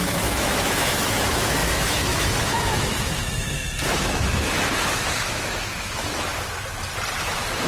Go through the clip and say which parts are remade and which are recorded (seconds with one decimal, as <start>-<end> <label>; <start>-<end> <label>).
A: 0.0-6.3 remade; 6.3-7.2 recorded; 7.2-7.7 remade